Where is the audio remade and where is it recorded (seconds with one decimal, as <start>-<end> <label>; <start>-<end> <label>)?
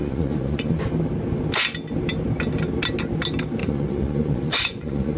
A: 0.0-0.8 remade; 0.8-3.6 recorded; 3.6-5.2 remade